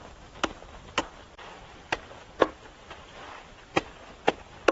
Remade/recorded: recorded